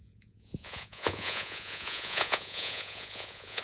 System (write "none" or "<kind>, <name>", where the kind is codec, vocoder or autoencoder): vocoder, Vocos